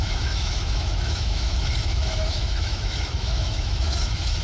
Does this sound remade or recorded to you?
remade